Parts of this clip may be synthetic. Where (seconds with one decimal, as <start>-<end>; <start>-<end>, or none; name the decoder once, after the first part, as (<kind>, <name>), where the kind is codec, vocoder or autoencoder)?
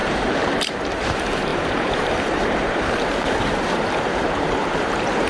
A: 0.0-5.3 (vocoder, BigVGAN v2)